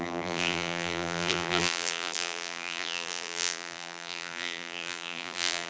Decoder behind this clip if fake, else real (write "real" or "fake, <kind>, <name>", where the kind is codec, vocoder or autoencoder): fake, vocoder, BigVGAN v2